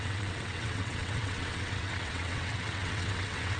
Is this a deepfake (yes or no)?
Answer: yes